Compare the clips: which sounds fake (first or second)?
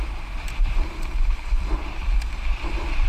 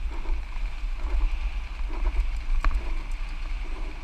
first